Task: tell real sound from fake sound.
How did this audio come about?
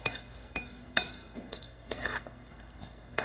fake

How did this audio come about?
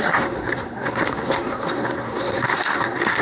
fake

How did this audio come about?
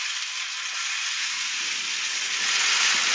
real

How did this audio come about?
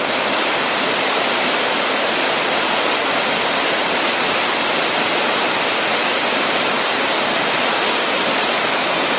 real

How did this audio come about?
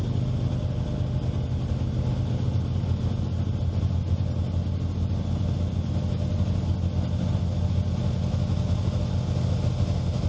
real